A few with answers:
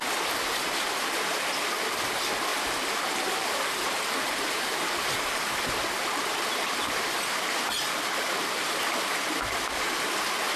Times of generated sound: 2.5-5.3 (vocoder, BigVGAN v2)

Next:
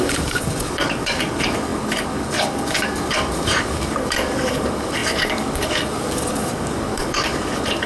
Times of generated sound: 0.0-7.9 (codec, DAC)

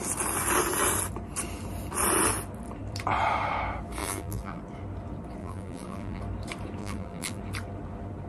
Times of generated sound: 4.0-4.6 (vocoder, BigVGAN v2); 5.4-6.2; 6.8-7.4